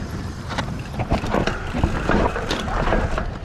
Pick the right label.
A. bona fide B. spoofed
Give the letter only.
B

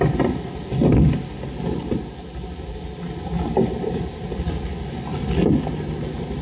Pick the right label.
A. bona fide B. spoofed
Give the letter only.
A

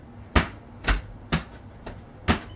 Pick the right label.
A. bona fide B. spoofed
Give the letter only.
A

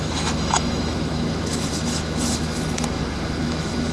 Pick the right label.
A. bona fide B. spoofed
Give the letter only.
B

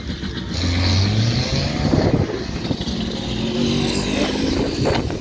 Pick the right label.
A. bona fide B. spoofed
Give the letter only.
A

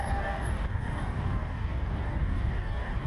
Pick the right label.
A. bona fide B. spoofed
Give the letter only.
B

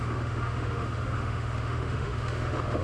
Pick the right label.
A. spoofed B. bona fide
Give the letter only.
A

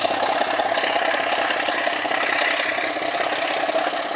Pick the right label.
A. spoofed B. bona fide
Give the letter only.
B